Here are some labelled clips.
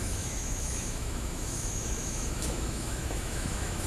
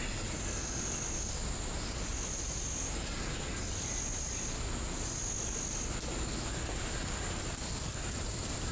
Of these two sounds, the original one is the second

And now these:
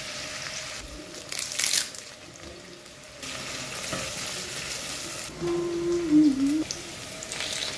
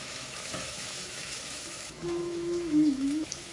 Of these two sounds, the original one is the first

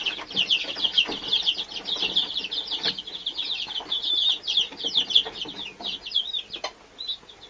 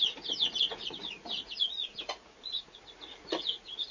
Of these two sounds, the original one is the first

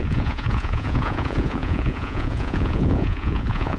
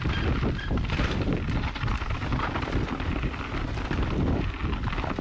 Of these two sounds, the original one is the second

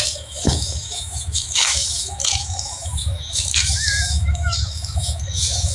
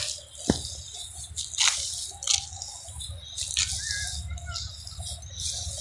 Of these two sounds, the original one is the second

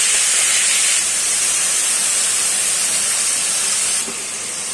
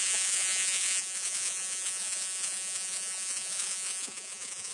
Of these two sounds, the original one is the first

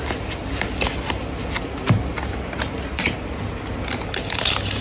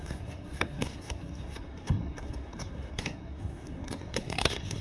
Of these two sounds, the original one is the first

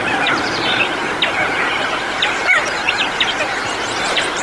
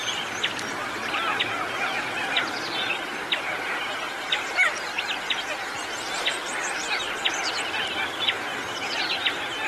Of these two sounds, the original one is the second